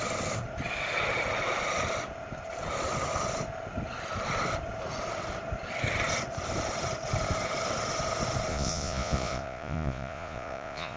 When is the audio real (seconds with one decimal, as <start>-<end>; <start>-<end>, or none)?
0.0-8.5